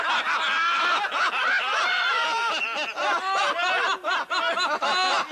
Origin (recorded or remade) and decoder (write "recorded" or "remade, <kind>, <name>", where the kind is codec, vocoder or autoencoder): recorded